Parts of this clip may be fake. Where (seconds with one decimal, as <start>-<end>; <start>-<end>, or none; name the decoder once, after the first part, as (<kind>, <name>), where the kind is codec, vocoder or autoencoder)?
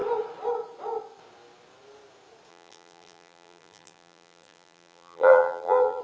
2.5-6.0 (vocoder, BigVGAN v2)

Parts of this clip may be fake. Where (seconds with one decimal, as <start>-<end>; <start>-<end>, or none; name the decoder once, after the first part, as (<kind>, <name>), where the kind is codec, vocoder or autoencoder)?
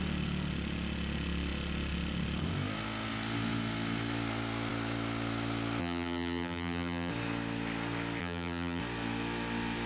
5.8-7.1 (vocoder, BigVGAN v2); 8.2-8.8